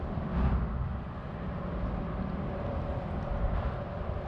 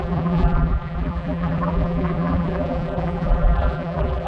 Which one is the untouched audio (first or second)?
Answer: first